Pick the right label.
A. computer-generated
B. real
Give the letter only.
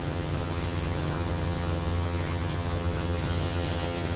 A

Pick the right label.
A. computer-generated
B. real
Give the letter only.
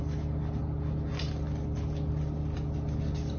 B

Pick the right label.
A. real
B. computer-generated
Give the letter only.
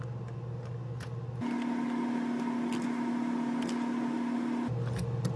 A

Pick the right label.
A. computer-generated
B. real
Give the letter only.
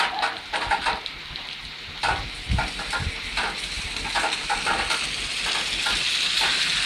B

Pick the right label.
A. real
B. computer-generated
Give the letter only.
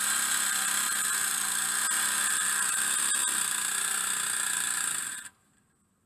A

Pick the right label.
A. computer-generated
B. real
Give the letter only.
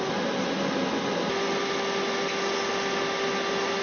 B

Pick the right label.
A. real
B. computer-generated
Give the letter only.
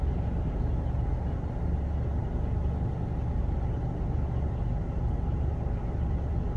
A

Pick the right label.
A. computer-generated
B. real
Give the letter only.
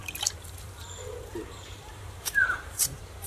A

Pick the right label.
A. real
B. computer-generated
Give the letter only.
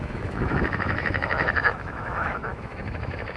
B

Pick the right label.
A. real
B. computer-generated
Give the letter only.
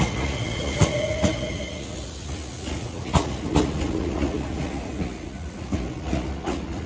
B